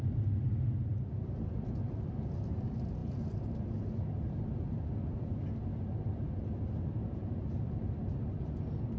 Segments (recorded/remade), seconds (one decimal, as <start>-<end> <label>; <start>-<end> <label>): 0.0-9.0 recorded